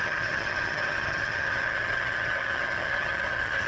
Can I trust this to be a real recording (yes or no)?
no